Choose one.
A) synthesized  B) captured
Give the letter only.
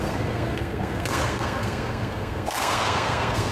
A